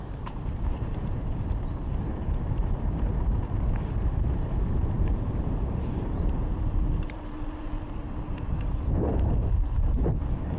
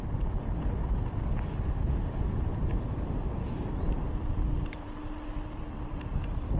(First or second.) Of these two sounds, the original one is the second